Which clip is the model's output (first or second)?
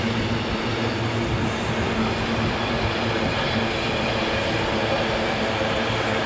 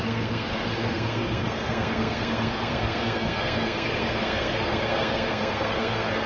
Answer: second